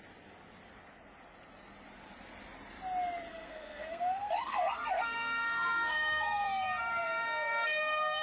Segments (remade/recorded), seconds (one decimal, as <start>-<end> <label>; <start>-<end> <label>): 0.0-3.3 recorded; 3.3-8.2 remade